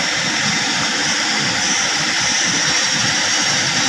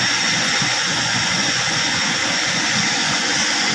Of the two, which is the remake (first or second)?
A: second